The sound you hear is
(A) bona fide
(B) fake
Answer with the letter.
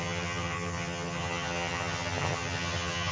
B